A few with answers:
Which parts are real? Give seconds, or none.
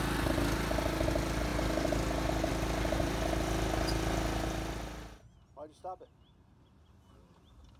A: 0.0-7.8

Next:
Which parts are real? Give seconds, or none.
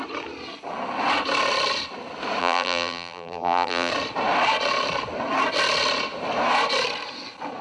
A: 0.0-2.4; 3.9-7.6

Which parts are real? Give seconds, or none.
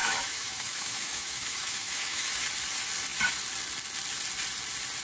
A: 2.3-5.0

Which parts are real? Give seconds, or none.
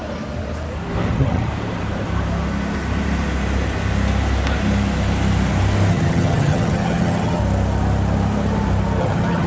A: 0.0-1.1; 1.5-5.9; 7.4-9.0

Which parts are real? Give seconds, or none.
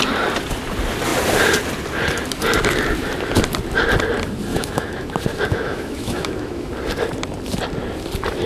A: 0.0-4.5; 5.1-5.5; 6.7-8.5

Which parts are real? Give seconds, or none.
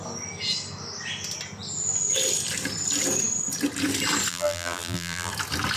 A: 0.0-4.3; 5.3-5.8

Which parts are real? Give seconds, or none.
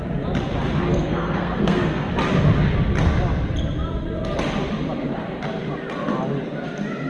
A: 0.0-0.9; 2.1-7.1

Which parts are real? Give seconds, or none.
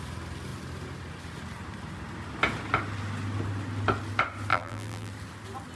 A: 0.0-4.5; 5.1-5.8